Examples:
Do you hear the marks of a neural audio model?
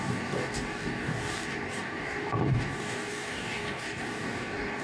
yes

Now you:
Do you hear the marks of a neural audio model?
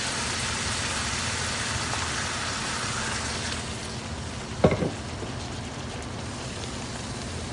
no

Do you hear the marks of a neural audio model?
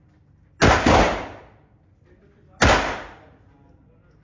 no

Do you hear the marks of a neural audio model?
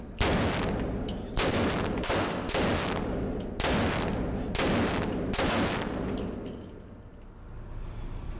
no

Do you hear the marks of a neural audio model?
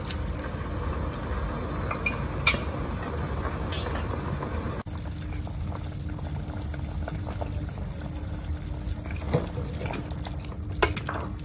no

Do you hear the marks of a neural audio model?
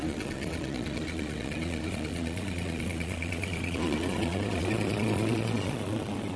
yes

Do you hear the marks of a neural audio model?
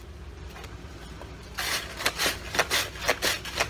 no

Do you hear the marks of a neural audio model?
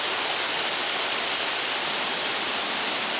no